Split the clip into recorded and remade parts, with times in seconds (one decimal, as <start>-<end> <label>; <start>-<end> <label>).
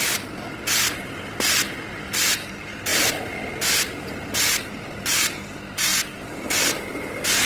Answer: 0.0-2.9 recorded; 2.9-4.9 remade; 4.9-7.5 recorded